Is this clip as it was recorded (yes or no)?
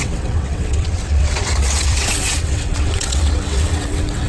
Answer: no